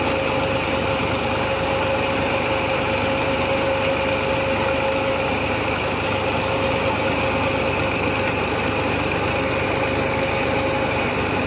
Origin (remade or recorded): recorded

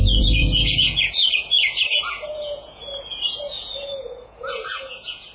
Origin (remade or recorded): remade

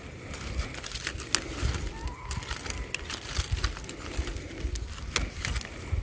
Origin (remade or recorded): recorded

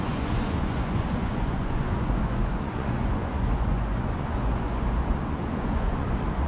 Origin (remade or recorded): remade